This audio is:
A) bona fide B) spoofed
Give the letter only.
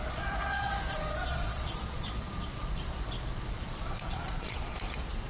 B